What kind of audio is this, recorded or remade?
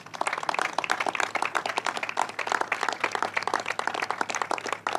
recorded